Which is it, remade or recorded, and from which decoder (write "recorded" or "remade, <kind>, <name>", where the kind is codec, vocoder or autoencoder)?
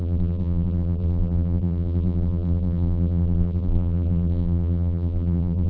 remade, vocoder, BigVGAN v2